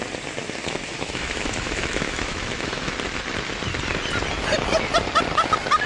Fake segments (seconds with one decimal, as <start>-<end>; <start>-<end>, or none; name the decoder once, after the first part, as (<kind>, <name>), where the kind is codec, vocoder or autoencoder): 0.4-2.9 (autoencoder, DAC-VAE)